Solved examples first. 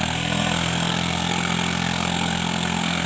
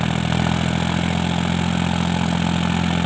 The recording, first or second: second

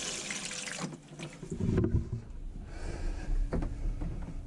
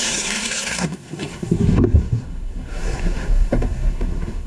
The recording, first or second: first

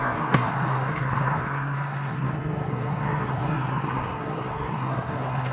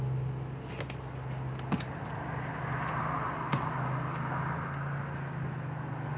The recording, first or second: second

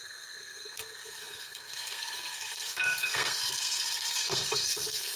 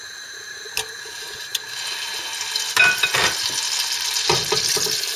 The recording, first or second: second